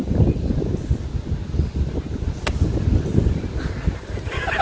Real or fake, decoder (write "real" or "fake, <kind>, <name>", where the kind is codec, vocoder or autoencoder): real